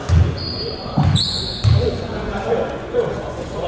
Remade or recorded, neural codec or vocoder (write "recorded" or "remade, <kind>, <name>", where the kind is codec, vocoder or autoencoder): remade, vocoder, Vocos